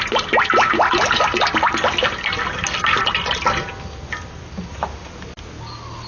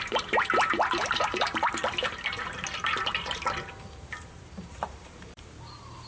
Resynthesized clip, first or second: second